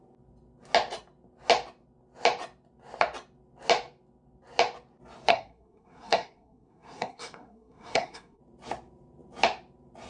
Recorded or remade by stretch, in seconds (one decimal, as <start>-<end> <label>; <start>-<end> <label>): 0.0-5.3 recorded; 5.3-8.4 remade; 8.4-10.1 recorded